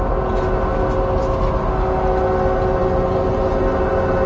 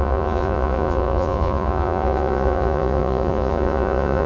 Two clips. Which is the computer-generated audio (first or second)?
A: second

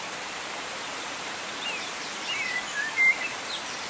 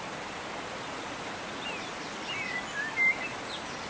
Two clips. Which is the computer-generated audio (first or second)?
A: first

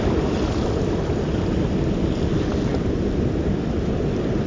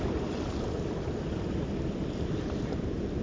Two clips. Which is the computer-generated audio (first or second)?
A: second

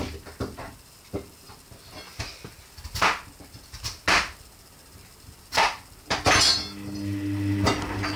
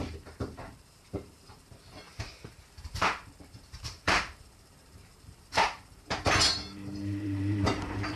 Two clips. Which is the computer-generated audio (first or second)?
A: second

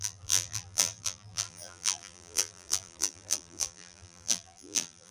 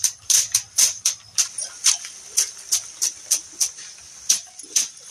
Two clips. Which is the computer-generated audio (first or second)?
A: first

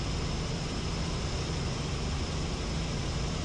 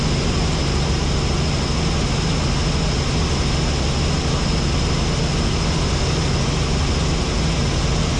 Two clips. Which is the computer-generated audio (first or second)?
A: first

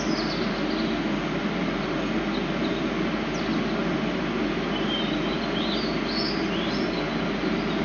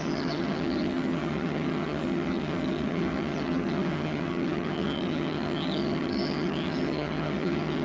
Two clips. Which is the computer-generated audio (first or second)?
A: second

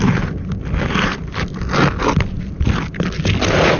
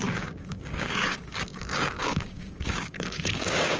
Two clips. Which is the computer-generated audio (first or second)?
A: second